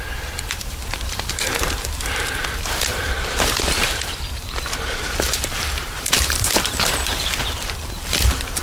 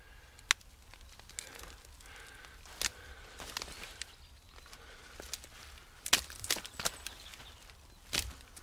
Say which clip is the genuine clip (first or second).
second